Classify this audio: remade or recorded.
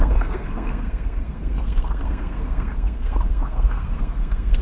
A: remade